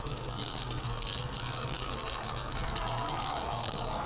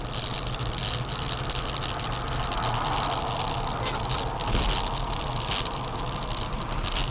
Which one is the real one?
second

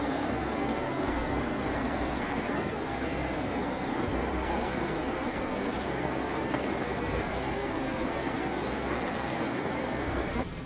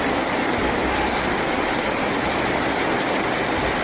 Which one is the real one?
second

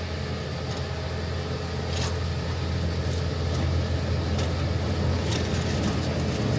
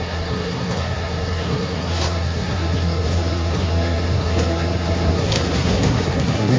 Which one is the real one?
first